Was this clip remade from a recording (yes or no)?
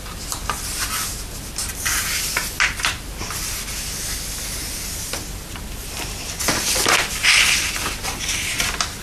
no